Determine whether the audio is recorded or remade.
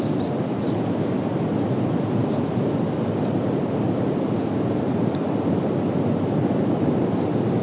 recorded